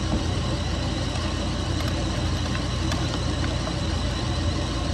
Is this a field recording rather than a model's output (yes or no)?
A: yes